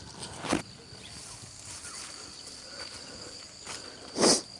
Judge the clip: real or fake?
real